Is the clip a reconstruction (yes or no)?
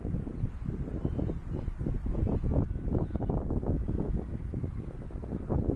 no